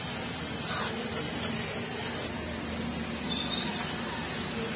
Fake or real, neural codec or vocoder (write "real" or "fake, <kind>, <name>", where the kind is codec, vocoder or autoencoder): real